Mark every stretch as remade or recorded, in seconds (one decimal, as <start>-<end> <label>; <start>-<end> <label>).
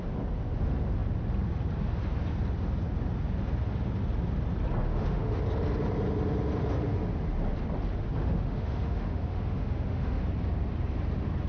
0.0-4.9 recorded; 4.9-5.4 remade; 5.4-8.2 recorded; 8.2-10.2 remade; 10.2-11.5 recorded